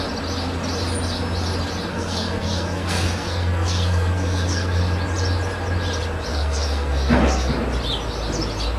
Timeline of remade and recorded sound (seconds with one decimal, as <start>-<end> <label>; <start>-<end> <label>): 0.0-1.9 recorded; 1.9-4.8 remade; 4.8-6.3 recorded; 6.3-7.5 remade; 7.5-8.8 recorded